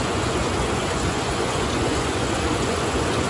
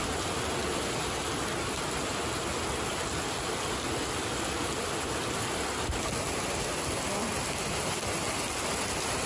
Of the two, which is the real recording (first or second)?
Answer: second